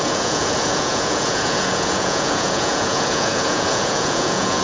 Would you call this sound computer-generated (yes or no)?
yes